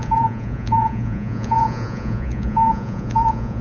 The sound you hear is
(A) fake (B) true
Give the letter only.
A